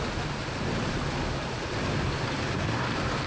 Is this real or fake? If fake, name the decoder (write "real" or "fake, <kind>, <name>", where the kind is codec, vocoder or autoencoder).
real